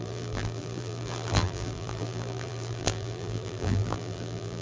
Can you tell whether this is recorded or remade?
remade